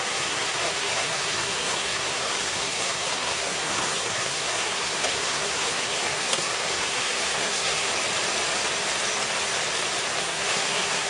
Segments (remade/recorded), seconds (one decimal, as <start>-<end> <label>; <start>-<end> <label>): 0.0-7.9 remade; 7.9-10.2 recorded; 10.2-11.1 remade